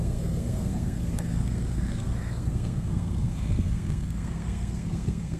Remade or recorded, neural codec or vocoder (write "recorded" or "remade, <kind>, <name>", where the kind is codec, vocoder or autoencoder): remade, codec, SNAC